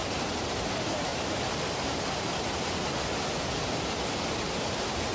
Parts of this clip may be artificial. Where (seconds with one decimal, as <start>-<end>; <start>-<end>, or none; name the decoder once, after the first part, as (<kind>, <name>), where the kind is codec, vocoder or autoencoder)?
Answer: 0.0-0.7 (vocoder, BigVGAN v2); 1.1-2.5